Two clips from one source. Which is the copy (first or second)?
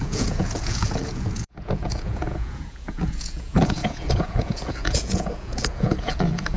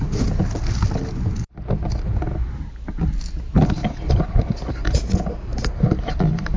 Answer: first